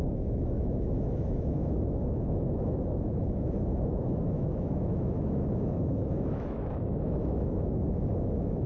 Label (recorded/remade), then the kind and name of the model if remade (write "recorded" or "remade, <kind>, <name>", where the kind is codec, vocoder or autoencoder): remade, autoencoder, DAC-VAE